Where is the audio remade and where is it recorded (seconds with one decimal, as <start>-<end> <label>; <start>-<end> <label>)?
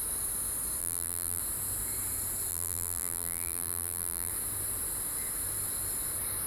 0.0-0.8 recorded; 0.8-1.4 remade; 1.4-2.5 recorded; 2.5-4.3 remade; 4.3-6.5 recorded